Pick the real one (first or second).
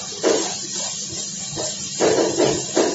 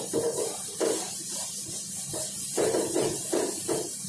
first